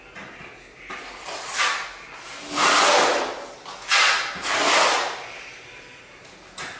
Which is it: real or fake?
real